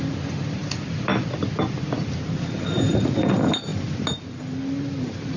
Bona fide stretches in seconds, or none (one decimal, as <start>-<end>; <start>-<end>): 0.0-5.4